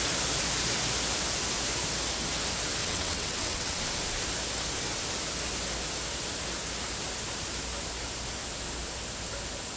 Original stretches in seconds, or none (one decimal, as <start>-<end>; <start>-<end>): 0.0-2.8; 3.8-9.8